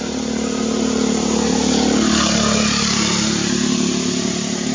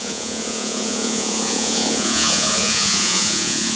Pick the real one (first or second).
first